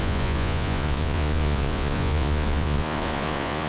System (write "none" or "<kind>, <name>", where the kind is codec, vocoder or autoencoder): vocoder, Vocos